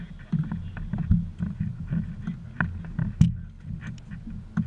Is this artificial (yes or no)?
no